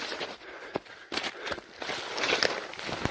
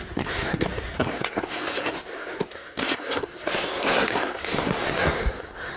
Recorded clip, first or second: first